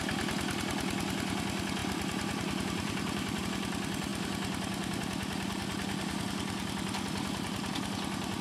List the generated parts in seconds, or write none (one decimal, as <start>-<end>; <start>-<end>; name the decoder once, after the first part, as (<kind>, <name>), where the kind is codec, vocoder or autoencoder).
1.8-3.4 (vocoder, BigVGAN v2)